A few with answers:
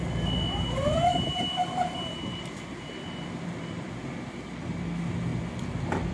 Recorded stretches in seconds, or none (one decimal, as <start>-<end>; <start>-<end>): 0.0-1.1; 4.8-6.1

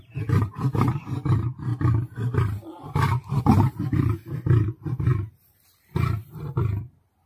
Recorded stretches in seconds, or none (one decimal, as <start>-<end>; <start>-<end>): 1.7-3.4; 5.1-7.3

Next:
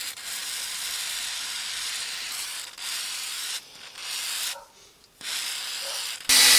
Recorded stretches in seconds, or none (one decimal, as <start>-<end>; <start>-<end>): 0.0-0.4; 3.6-6.6

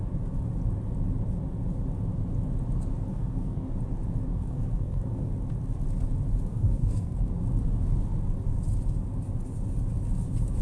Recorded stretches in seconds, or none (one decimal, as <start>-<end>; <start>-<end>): 0.0-3.1; 3.7-4.3; 5.3-6.5; 7.3-10.6

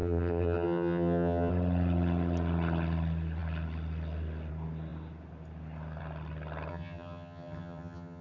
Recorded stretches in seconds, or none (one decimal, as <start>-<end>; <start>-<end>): 1.5-6.7

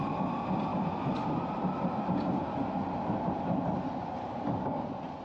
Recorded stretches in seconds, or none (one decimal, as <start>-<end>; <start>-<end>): 0.0-4.2; 4.8-5.2

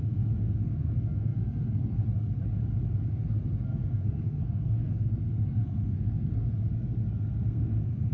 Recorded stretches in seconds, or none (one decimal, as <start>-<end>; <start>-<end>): 2.4-3.1

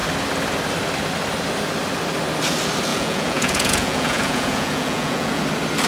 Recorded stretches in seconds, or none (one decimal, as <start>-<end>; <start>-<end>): 0.0-2.9; 5.4-5.9